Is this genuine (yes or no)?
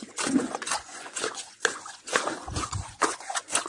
no